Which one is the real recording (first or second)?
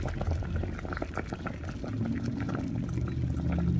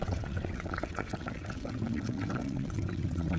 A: first